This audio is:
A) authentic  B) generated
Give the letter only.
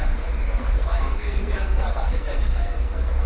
B